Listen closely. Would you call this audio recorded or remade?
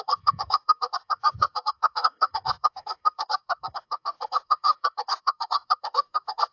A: remade